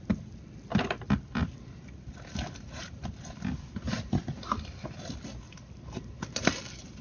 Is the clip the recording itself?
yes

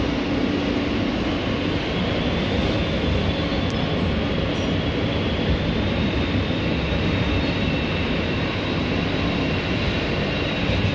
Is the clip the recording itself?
yes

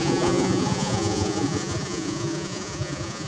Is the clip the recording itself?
no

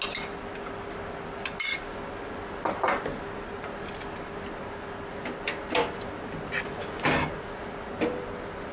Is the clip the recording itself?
yes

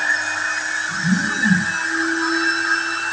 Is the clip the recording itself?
yes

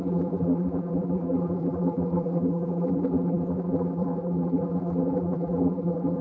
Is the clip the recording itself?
no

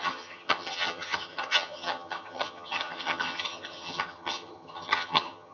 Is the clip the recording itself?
no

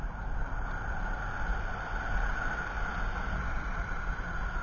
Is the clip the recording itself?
yes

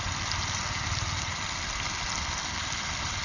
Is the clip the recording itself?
yes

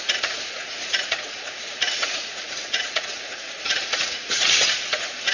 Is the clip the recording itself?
no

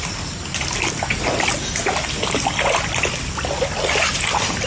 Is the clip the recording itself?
yes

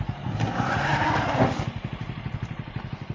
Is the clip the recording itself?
yes